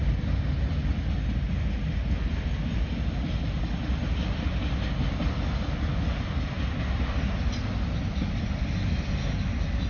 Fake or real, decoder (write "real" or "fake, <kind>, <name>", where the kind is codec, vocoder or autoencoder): real